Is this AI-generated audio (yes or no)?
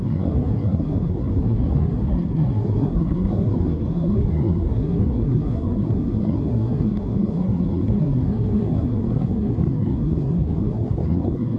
yes